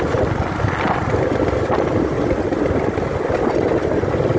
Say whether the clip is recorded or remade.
recorded